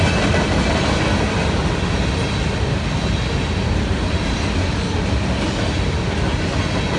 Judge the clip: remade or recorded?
recorded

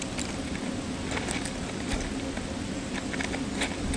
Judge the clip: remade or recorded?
recorded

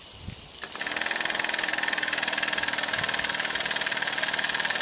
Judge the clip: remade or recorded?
recorded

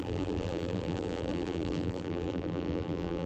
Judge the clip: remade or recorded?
remade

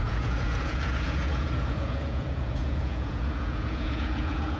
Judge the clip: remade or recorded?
remade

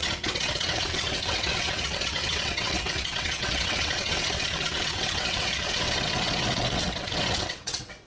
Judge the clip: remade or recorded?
remade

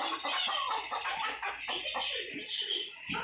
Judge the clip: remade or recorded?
recorded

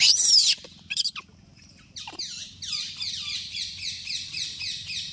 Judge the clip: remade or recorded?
remade